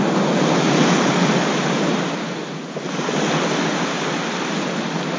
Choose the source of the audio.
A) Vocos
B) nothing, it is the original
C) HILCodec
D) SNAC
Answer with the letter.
B